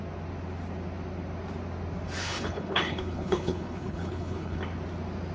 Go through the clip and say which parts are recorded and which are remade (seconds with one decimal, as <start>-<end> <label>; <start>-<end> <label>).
0.0-2.2 recorded; 2.2-4.6 remade; 4.6-5.3 recorded